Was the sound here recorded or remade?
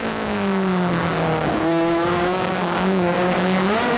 remade